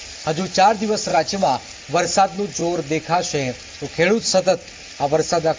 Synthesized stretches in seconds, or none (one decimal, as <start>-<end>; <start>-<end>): 1.1-1.8